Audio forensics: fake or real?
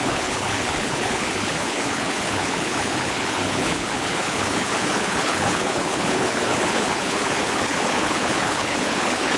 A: fake